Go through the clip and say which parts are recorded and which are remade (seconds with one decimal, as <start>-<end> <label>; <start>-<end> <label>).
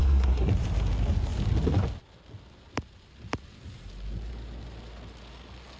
0.0-0.5 remade; 0.5-5.8 recorded